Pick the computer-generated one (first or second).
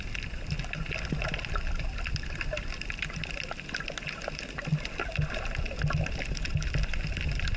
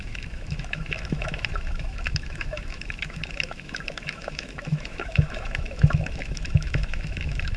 second